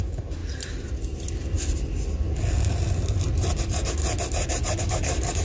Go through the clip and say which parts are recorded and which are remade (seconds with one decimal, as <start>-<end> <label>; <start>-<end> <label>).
0.0-0.4 remade; 0.4-3.6 recorded; 3.6-4.0 remade; 4.0-4.8 recorded; 4.8-5.4 remade